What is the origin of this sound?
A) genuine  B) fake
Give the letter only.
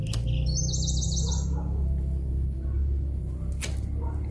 A